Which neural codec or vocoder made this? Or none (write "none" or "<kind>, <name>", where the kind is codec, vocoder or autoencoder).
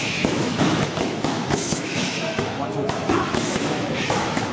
autoencoder, DAC-VAE